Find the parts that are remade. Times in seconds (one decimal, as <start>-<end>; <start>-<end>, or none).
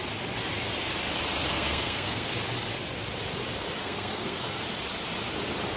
1.5-2.4; 3.8-4.6